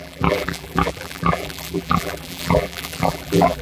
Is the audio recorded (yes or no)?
no